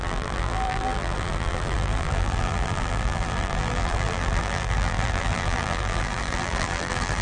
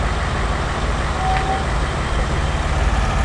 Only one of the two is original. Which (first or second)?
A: second